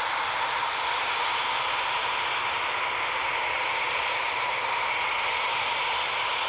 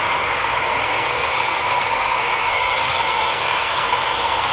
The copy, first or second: second